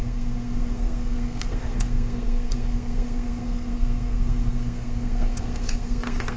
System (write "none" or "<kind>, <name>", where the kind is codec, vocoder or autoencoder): codec, SNAC